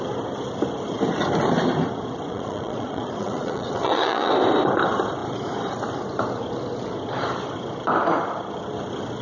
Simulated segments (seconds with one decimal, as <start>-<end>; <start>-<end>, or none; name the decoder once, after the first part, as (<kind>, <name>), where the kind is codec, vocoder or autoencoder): 2.3-4.3 (vocoder, Vocos)

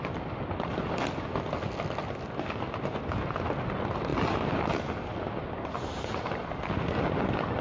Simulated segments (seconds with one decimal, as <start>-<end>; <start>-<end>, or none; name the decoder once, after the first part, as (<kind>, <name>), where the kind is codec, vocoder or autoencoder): none

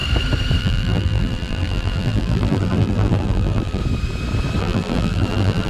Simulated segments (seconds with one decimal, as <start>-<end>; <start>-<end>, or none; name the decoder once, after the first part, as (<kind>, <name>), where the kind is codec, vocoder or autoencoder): 0.6-3.8 (vocoder, BigVGAN v2); 4.6-5.7

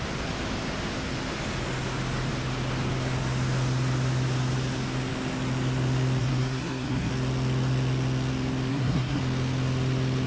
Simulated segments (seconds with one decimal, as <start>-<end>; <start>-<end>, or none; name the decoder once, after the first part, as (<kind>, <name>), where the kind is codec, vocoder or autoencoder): 6.2-7.1 (codec, SNAC); 8.7-9.2

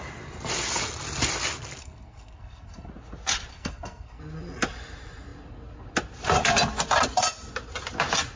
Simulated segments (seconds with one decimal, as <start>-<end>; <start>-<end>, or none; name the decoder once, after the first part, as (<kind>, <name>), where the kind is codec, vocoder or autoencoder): 1.8-2.9 (codec, SNAC); 3.5-4.2

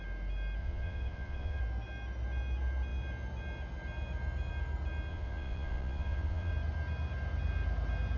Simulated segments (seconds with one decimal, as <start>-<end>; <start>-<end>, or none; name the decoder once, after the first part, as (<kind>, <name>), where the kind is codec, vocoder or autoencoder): 0.6-1.6 (vocoder, Vocos); 5.1-6.5